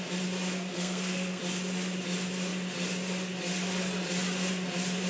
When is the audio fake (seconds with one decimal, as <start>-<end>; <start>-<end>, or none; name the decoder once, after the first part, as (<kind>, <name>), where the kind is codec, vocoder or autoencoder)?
0.7-1.4 (codec, SNAC)